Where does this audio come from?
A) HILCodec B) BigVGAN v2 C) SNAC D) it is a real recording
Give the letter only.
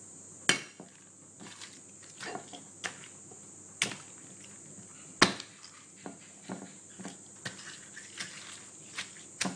D